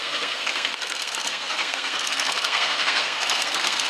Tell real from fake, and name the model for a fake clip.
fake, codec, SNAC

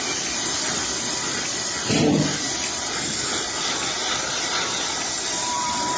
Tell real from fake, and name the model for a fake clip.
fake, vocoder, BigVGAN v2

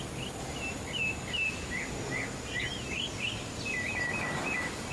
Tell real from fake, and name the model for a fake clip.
real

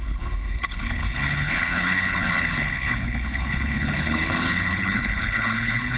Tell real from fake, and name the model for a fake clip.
fake, codec, HILCodec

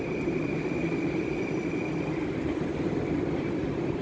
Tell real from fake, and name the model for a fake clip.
real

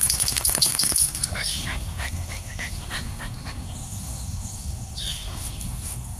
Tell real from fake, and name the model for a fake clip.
fake, codec, SNAC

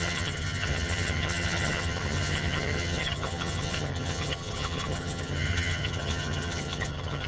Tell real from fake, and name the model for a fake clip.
fake, vocoder, HiFi-GAN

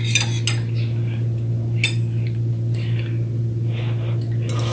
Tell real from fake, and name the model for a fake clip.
real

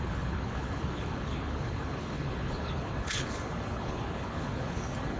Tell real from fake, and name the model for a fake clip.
fake, codec, HILCodec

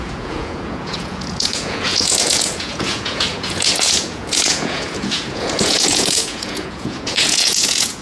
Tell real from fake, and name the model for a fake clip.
fake, vocoder, Vocos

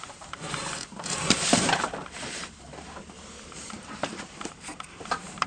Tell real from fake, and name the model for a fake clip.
fake, vocoder, BigVGAN v2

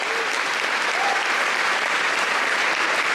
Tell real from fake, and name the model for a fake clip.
fake, vocoder, BigVGAN v2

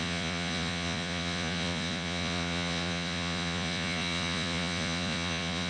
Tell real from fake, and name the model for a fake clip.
fake, vocoder, Vocos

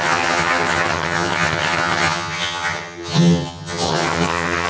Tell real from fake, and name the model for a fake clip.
fake, vocoder, HiFi-GAN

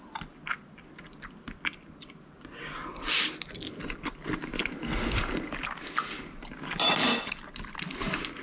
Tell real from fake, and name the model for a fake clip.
real